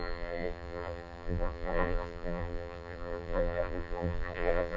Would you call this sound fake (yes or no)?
yes